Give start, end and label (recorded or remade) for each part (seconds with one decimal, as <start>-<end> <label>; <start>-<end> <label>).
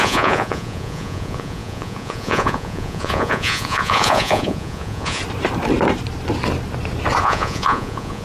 0.0-5.2 remade; 5.2-7.2 recorded; 7.2-8.2 remade